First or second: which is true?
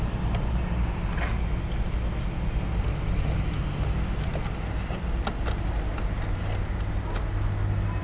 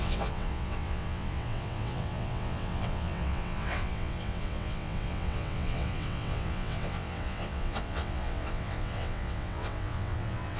first